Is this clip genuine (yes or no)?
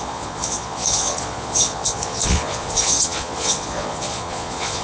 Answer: no